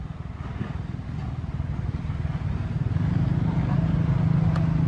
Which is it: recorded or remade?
recorded